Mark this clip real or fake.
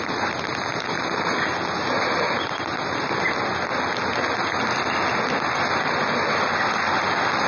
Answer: real